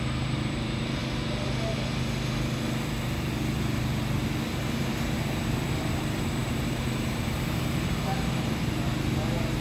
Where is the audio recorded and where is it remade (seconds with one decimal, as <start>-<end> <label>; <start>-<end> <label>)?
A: 0.0-1.0 remade; 1.0-4.6 recorded; 4.6-9.6 remade